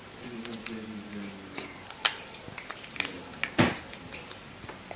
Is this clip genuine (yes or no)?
yes